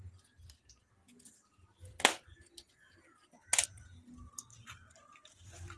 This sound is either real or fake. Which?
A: real